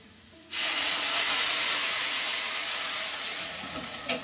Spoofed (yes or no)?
yes